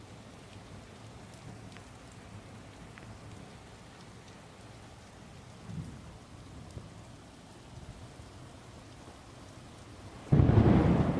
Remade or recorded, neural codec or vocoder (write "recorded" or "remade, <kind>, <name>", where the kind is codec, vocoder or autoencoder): recorded